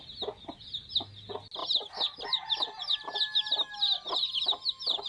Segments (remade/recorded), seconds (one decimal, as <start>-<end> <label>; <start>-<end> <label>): 0.0-5.1 recorded